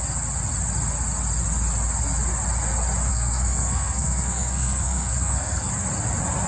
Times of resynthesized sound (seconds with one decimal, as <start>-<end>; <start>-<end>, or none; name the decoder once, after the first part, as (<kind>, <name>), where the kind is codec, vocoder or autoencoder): 3.1-5.7 (codec, SNAC)